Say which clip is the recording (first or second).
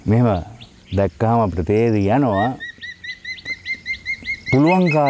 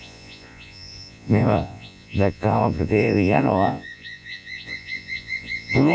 first